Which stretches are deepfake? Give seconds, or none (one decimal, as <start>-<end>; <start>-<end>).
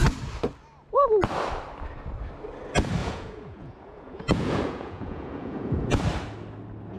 3.0-6.0